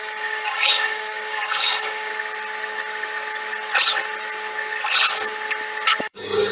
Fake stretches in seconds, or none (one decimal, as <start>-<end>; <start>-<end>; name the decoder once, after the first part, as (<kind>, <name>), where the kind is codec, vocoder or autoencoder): 0.0-2.1 (codec, DAC); 6.0-6.5